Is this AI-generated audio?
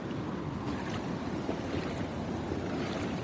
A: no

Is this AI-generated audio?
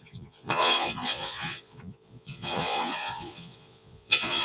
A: yes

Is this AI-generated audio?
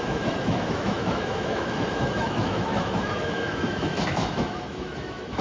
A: yes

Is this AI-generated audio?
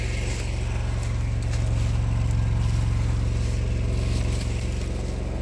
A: no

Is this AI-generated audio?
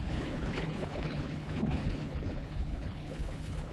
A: yes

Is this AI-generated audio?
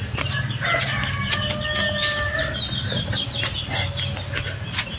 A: no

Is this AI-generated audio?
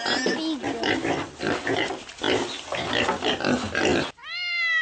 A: no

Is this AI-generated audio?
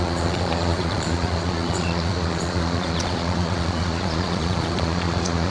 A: yes